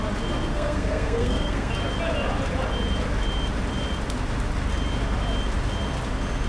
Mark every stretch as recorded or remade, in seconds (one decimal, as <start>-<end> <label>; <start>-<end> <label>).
0.0-0.5 recorded; 0.5-1.7 remade; 1.7-6.5 recorded